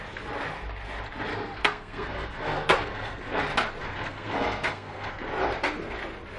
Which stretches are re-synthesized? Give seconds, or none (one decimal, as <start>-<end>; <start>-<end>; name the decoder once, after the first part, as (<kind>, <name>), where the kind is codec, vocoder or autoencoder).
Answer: 1.3-3.4 (codec, SNAC); 3.8-5.2